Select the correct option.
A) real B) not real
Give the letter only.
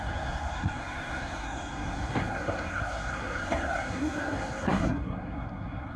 B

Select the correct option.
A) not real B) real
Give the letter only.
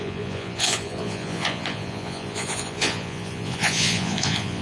A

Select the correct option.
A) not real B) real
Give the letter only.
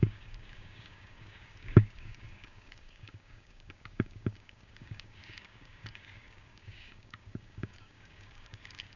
A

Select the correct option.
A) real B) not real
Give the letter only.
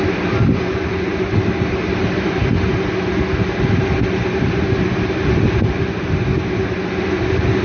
A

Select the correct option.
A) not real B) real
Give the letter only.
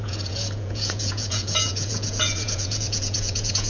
A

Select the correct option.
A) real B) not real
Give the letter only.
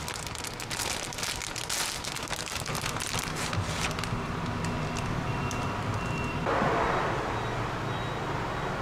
A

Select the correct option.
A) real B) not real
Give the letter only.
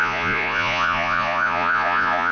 B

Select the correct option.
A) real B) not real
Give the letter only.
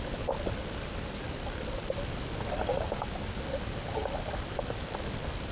A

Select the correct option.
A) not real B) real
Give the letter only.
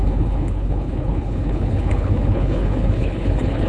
A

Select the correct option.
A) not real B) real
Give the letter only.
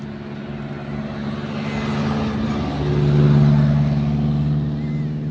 B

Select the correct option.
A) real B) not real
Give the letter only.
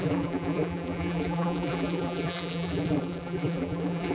B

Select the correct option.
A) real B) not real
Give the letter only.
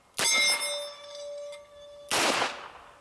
A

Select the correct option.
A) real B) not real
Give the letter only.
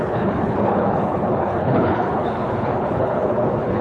B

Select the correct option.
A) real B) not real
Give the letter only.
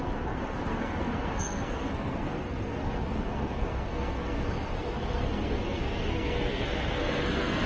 B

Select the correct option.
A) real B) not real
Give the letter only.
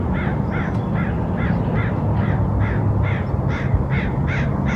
A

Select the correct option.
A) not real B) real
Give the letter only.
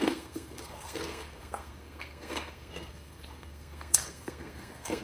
A